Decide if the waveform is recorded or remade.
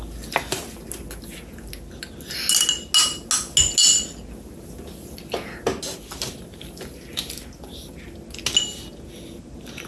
recorded